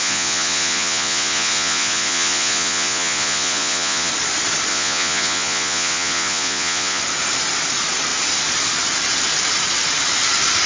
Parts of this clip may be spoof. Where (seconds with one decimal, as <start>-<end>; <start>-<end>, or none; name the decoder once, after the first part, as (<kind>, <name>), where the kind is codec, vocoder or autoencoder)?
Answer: 0.0-4.1 (vocoder, Vocos); 4.7-7.0